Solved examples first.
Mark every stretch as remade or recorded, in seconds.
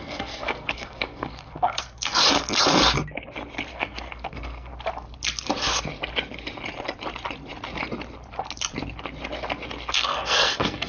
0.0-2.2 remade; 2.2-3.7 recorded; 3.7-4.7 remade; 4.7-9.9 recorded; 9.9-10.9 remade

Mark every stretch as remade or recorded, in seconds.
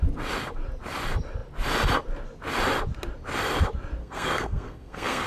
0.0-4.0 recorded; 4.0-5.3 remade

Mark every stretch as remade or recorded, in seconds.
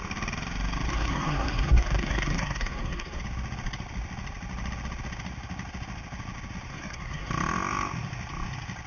0.0-0.9 recorded; 0.9-3.2 remade; 3.2-6.7 recorded; 6.7-7.3 remade; 7.3-8.9 recorded